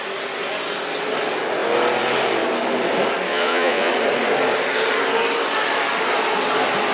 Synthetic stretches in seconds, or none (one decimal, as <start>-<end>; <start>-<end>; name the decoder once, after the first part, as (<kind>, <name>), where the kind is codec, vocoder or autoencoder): 3.3-3.9 (vocoder, Vocos)